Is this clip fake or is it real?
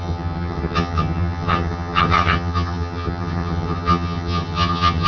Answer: fake